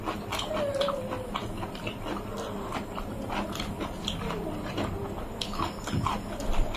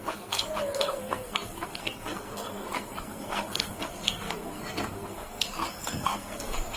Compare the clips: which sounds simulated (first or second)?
second